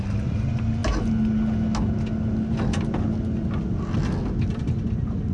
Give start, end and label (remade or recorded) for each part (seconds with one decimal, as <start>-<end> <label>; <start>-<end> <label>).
0.0-5.3 recorded